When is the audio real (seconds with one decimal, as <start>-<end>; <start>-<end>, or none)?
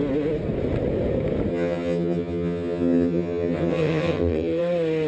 0.0-1.5; 4.6-5.1